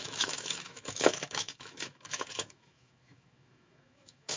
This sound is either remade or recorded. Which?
remade